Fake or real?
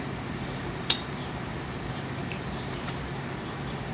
fake